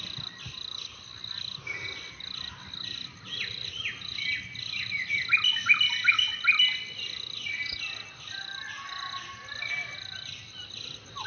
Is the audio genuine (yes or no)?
yes